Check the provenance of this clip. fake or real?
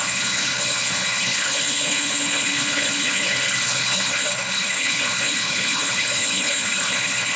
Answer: fake